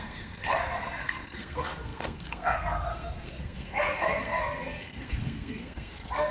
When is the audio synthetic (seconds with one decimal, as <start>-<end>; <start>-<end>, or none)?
0.0-6.3